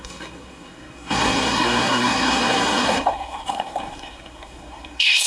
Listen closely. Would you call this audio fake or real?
fake